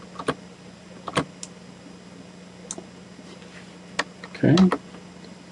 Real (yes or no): yes